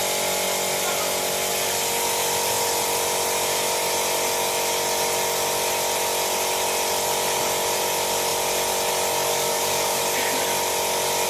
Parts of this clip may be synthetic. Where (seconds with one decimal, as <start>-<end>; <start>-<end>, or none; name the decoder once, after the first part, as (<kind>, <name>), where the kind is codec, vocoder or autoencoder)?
9.3-10.0 (codec, DAC)